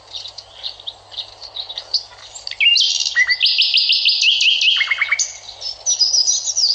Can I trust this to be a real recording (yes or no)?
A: yes